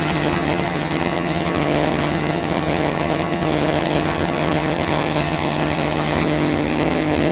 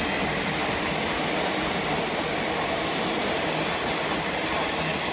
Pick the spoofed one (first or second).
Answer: first